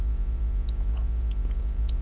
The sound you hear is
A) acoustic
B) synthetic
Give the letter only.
B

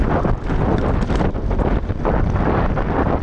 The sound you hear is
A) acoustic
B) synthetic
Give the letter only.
A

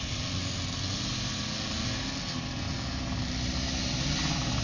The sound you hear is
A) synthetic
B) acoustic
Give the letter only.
B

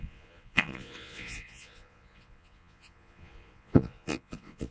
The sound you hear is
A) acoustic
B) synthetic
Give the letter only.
B